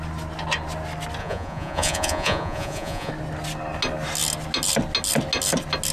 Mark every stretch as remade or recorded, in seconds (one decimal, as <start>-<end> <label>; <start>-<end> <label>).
0.0-1.2 recorded; 1.2-3.1 remade; 3.1-5.9 recorded